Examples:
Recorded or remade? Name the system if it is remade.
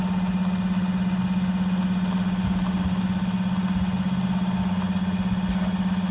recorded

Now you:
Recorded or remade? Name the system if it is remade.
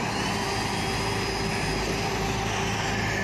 recorded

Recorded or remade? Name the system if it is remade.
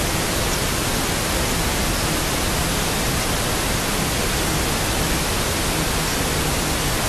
recorded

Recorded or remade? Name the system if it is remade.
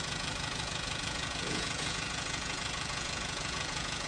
remade, vocoder, Vocos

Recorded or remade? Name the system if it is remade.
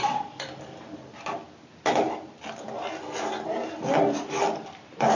recorded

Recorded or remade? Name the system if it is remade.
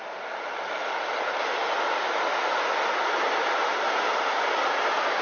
recorded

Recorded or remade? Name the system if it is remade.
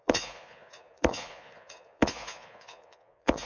remade, vocoder, Vocos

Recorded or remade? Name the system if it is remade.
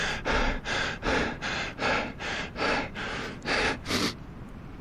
recorded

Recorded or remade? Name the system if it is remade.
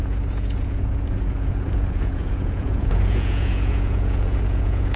remade, vocoder, Vocos